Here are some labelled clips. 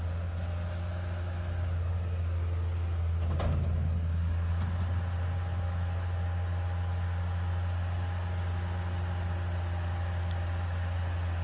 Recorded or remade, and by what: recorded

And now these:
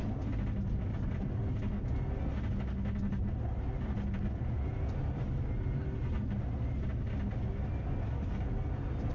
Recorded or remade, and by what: recorded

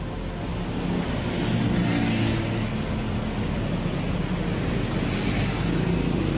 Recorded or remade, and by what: recorded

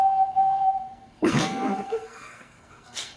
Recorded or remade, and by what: remade, codec, SNAC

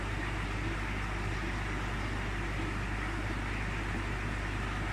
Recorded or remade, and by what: recorded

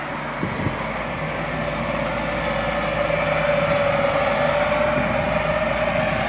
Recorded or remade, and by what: recorded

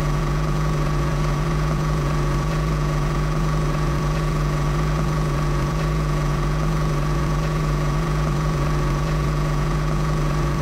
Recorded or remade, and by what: remade, vocoder, Vocos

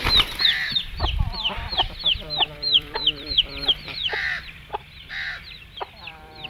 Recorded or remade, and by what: remade, vocoder, BigVGAN v2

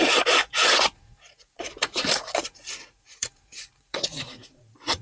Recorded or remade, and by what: remade, vocoder, Vocos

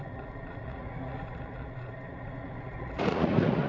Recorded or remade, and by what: remade, vocoder, Vocos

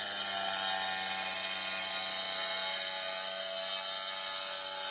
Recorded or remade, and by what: recorded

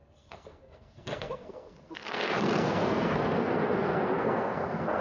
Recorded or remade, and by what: remade, codec, SNAC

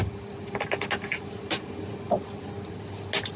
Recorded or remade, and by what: recorded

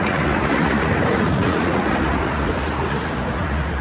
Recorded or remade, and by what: remade, vocoder, Vocos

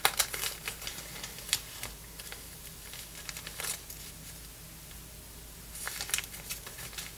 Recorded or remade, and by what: recorded